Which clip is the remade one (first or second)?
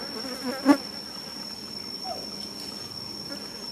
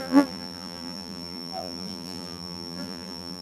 second